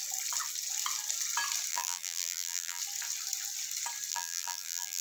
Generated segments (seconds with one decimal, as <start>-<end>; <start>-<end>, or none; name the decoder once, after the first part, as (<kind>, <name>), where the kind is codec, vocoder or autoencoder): 1.7-2.8 (vocoder, BigVGAN v2); 4.1-5.0